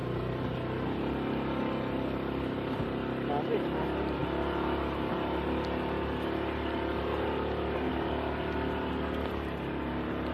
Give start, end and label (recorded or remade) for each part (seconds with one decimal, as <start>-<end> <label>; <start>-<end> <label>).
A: 0.0-10.3 recorded